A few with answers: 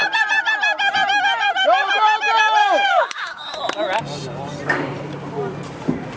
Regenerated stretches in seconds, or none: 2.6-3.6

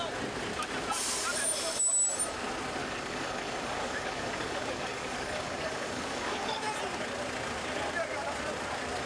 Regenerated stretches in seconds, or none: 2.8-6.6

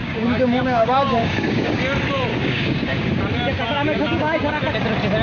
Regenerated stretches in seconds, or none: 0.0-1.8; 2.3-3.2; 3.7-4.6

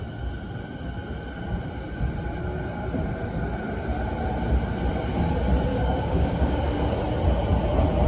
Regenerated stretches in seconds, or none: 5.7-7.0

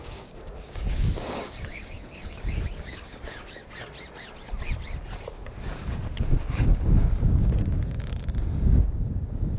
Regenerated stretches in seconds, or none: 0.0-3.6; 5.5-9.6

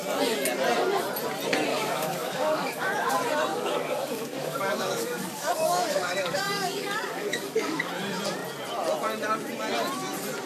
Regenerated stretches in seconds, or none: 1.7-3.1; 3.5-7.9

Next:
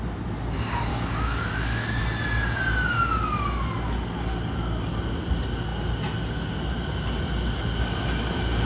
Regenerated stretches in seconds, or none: 0.9-2.0

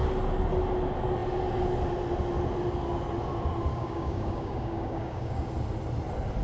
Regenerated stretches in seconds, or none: 3.7-5.5